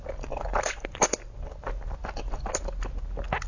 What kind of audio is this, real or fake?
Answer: real